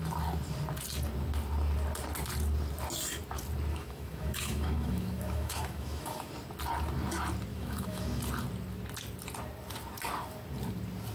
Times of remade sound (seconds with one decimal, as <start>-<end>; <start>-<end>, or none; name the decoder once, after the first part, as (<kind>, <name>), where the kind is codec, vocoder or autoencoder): 3.7-6.3 (autoencoder, DAC-VAE); 7.5-8.2